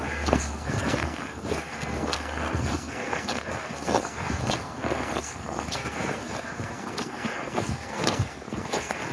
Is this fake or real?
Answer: fake